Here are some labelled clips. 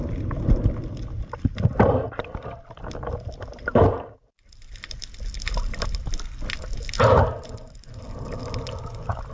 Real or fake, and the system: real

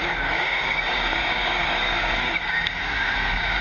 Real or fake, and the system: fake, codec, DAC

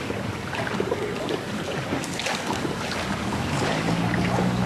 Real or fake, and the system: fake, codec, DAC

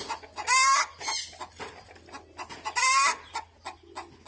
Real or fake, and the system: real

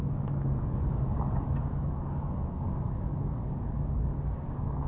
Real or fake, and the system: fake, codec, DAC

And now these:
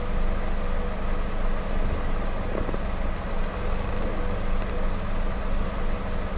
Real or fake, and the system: real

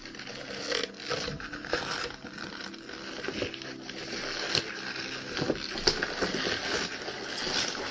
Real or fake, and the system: real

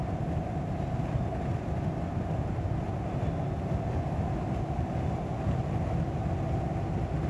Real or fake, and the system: real